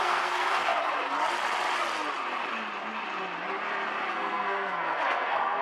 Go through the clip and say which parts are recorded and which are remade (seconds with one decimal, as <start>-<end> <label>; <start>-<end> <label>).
0.0-0.7 remade; 0.7-4.1 recorded; 4.1-5.6 remade